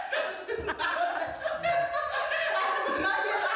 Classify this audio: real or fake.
real